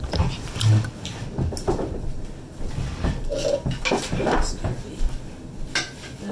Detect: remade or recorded recorded